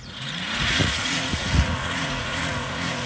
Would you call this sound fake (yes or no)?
yes